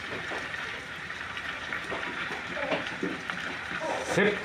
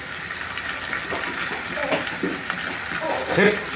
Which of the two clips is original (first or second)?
second